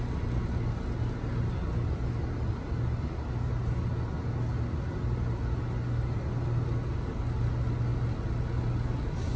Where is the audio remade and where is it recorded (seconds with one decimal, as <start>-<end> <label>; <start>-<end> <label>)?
0.0-9.4 recorded